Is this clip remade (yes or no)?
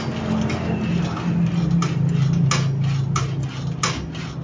no